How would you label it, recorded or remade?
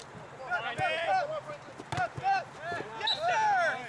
recorded